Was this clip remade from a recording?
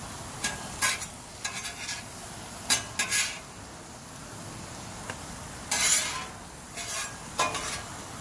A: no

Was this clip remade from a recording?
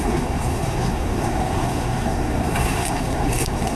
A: yes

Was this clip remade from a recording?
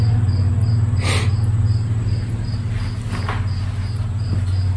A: no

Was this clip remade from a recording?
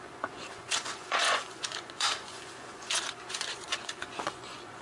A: yes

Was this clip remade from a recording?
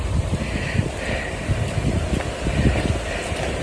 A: no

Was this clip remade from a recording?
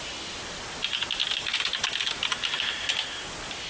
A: no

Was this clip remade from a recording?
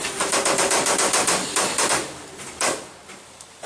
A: no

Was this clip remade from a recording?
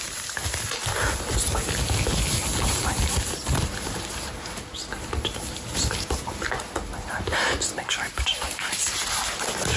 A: no